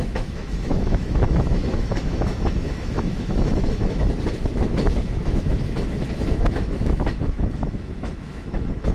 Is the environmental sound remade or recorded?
remade